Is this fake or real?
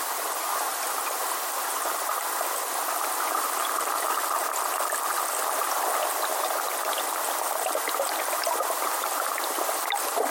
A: real